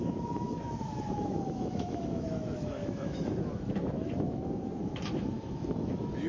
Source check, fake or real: fake